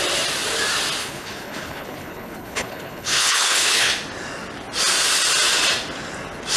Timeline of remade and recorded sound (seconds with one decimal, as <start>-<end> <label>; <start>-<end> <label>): 0.0-1.0 recorded; 1.0-3.9 remade; 3.9-6.6 recorded

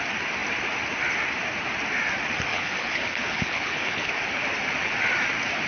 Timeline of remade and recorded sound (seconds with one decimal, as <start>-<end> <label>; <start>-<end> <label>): 0.0-2.5 recorded; 2.5-4.1 remade; 4.1-5.7 recorded

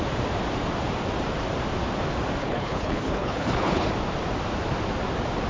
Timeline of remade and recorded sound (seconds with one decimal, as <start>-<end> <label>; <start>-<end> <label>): 0.0-2.4 recorded; 2.4-3.9 remade; 3.9-5.5 recorded

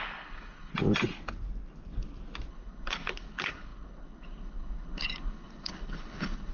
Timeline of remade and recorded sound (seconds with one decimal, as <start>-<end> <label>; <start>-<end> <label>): 0.0-0.7 remade; 0.7-2.5 recorded; 2.5-6.5 remade